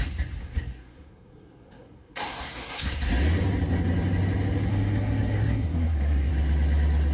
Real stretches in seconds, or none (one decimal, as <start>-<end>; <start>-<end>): 0.0-0.4; 3.0-4.7; 6.3-7.1